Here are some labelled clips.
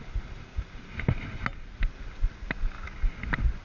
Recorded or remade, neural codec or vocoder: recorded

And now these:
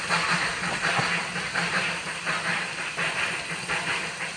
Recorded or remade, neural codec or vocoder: recorded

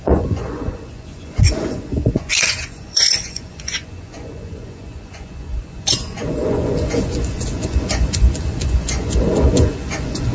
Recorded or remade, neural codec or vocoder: remade, vocoder, Vocos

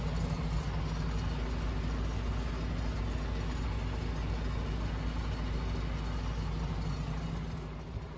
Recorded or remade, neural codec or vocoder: recorded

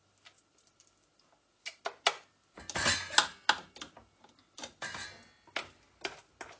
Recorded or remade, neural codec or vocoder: recorded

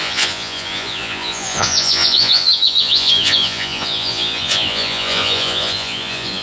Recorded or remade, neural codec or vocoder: remade, vocoder, Vocos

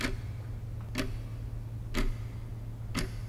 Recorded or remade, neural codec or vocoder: recorded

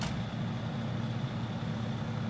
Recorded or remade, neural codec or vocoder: recorded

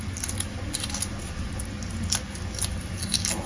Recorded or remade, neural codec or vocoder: recorded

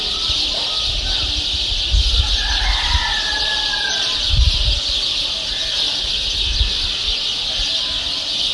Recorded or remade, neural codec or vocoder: recorded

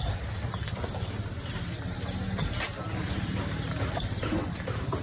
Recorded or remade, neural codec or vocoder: recorded